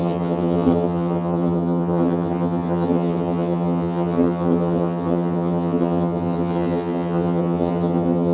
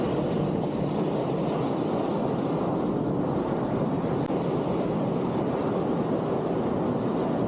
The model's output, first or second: first